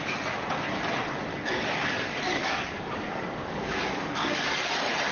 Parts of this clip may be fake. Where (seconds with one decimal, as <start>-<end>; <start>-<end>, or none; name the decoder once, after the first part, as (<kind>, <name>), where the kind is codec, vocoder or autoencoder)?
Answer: 1.3-4.4 (codec, DAC)